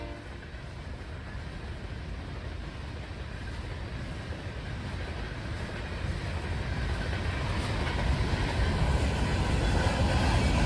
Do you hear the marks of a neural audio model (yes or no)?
no